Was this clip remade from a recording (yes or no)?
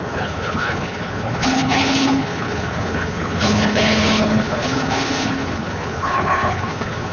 yes